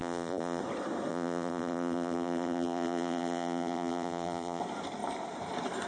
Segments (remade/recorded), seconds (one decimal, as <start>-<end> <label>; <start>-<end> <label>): 0.0-0.6 remade; 0.6-1.1 recorded; 1.1-4.6 remade; 4.6-5.9 recorded